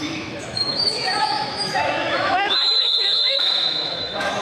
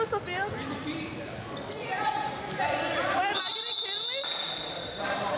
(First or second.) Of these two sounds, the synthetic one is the first